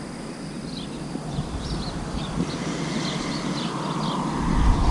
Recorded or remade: recorded